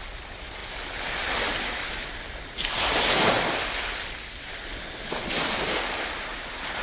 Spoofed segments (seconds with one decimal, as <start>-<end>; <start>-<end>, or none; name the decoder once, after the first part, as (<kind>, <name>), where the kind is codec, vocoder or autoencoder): none